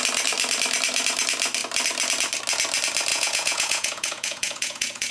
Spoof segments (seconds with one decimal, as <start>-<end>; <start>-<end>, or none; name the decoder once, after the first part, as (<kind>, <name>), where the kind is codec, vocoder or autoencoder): 3.1-5.1 (vocoder, Vocos)